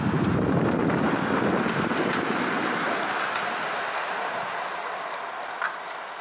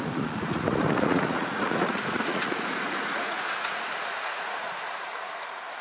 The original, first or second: first